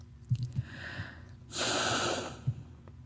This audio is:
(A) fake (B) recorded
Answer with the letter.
A